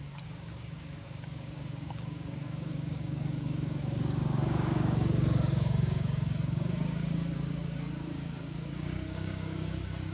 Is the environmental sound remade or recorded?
remade